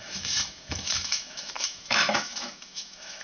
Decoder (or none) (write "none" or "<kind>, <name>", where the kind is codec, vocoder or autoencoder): autoencoder, DAC-VAE